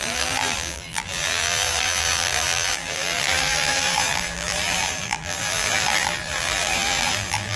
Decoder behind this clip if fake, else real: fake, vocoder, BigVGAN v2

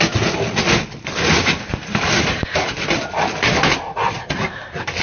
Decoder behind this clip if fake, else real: real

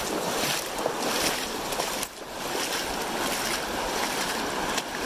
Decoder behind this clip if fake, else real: real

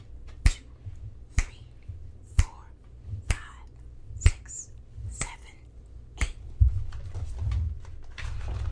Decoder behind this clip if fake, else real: real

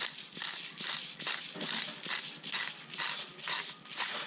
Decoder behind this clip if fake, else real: real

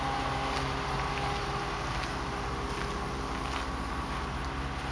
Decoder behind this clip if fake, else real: real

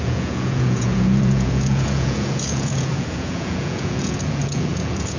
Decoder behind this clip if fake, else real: fake, vocoder, Vocos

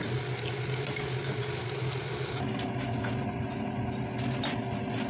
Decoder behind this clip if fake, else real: real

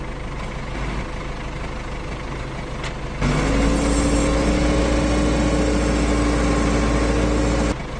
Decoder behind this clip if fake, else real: real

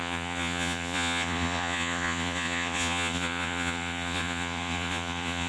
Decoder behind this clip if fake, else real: fake, vocoder, Vocos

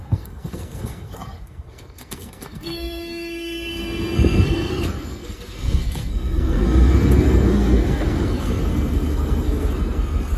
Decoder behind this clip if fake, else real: fake, codec, SNAC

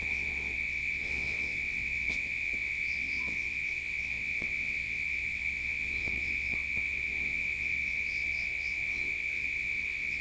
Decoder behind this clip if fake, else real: fake, vocoder, WaveNeXt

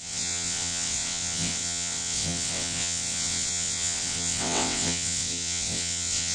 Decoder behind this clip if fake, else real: fake, vocoder, WaveNeXt